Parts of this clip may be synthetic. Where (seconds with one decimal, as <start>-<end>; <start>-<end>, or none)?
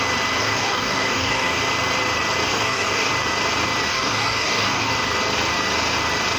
0.4-1.6; 2.5-3.1; 3.9-4.9